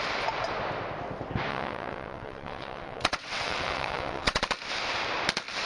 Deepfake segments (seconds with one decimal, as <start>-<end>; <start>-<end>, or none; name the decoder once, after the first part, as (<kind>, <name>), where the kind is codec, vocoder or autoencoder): 1.5-4.4 (vocoder, WaveNeXt)